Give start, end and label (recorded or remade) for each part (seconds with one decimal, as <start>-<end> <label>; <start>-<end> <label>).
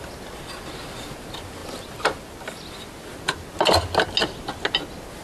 0.0-5.2 recorded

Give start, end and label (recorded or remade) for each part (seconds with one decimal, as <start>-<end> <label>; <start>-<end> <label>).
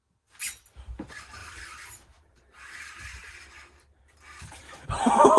0.0-1.4 recorded; 1.4-4.6 remade; 4.6-5.4 recorded